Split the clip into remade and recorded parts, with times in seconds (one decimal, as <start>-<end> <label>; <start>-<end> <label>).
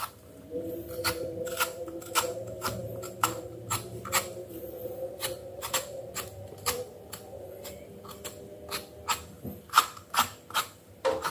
0.0-11.3 remade